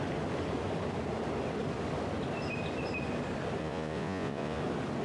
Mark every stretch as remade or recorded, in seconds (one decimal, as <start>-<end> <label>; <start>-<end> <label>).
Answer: 0.0-3.6 recorded; 3.6-4.6 remade; 4.6-5.0 recorded